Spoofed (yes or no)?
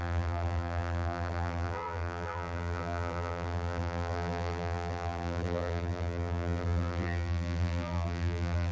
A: yes